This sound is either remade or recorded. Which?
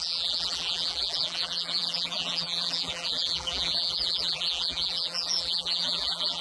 remade